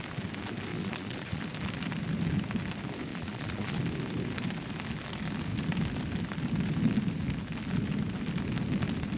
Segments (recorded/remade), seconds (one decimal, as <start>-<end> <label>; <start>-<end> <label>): 0.0-0.7 recorded; 0.7-1.4 remade; 1.4-3.1 recorded; 3.1-3.8 remade; 3.8-9.2 recorded